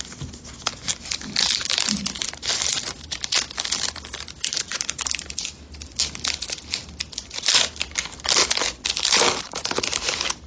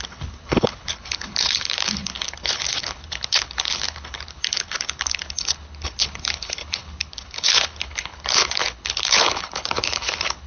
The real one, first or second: first